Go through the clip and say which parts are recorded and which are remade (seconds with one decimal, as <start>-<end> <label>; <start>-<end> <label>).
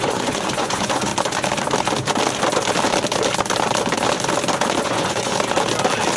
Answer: 0.0-1.1 remade; 1.1-4.8 recorded; 4.8-5.3 remade; 5.3-6.2 recorded